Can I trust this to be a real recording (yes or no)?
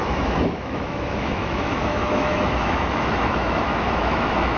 no